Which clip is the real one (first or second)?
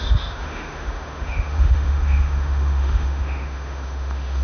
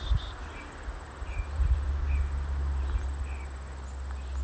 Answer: second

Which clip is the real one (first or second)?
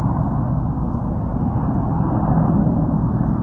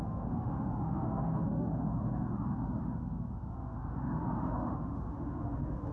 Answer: first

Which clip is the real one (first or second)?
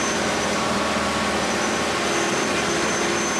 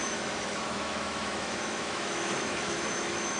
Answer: first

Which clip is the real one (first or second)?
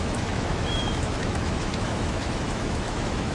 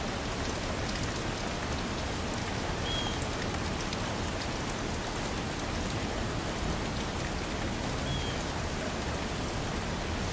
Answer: second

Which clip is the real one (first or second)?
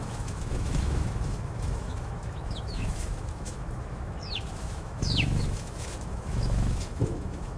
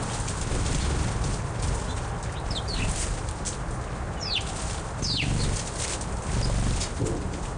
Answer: second